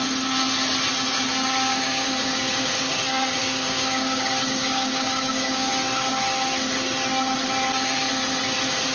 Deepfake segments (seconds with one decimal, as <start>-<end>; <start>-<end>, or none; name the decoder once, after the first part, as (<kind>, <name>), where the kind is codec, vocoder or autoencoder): 1.7-2.9 (codec, DAC); 3.4-5.7